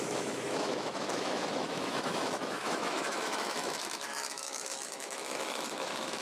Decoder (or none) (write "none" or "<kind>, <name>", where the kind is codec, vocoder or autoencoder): autoencoder, DAC-VAE